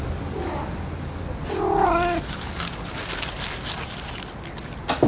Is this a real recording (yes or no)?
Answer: yes